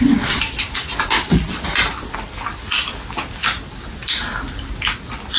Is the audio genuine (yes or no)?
yes